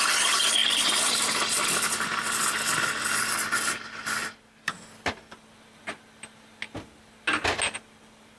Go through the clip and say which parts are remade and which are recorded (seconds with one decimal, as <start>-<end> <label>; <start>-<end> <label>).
0.0-8.4 recorded